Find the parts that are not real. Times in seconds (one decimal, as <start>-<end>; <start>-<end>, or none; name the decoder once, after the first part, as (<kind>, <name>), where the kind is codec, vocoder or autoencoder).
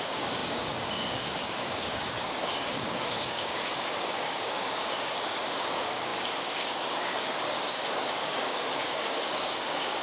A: 0.0-10.0 (codec, DAC)